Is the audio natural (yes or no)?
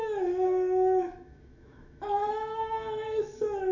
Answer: no